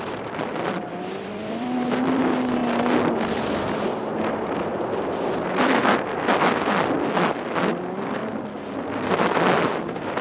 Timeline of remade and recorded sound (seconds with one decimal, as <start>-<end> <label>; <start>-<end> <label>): 0.0-2.6 remade; 2.6-4.3 recorded; 4.3-4.7 remade; 4.7-7.6 recorded; 7.6-8.2 remade; 8.2-10.2 recorded